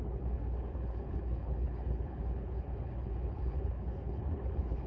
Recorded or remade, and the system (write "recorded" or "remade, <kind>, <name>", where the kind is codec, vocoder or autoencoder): remade, codec, HILCodec